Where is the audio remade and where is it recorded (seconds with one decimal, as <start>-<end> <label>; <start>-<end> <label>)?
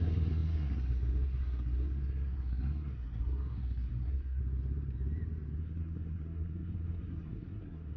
0.0-4.4 remade; 4.4-5.6 recorded; 5.6-8.0 remade